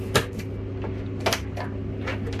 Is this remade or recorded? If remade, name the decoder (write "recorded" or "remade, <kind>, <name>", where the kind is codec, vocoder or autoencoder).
recorded